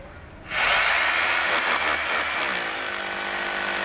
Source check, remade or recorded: recorded